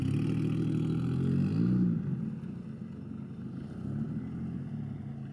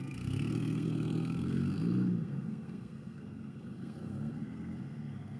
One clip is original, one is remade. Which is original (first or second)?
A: first